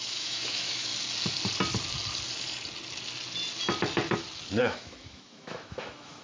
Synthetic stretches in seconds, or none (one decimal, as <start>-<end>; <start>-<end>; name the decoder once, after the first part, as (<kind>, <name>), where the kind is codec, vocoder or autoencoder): 0.0-0.9 (autoencoder, DAC-VAE); 4.6-6.2